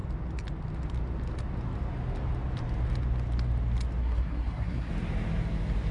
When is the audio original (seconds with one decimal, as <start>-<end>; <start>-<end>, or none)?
0.0-4.0; 4.9-5.9